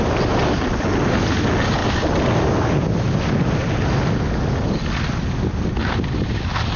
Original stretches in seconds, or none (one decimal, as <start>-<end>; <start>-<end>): 0.0-6.8